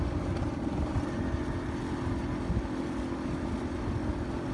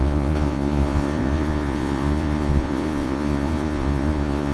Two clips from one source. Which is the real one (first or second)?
first